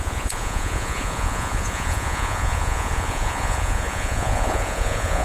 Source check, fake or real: fake